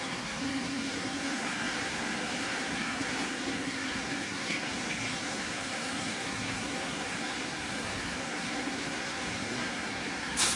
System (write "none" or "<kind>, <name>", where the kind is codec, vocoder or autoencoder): codec, SNAC